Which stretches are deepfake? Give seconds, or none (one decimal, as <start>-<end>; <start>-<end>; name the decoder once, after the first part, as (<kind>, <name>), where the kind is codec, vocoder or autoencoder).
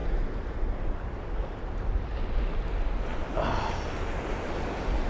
none